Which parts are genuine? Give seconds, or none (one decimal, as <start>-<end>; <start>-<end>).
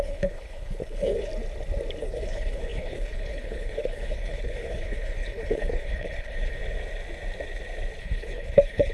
1.3-2.0; 6.6-8.0